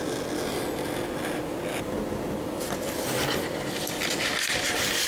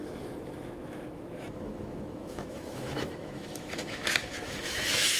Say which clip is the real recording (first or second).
first